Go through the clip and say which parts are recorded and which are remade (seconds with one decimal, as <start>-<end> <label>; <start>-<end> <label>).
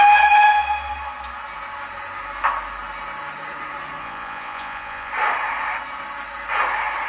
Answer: 0.0-4.0 recorded; 4.0-5.1 remade; 5.1-7.1 recorded